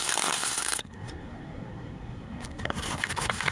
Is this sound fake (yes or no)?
yes